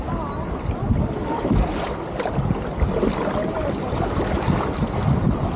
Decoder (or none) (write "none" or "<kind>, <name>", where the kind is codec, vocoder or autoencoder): none